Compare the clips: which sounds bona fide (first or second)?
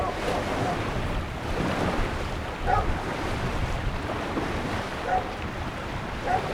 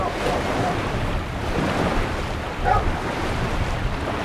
second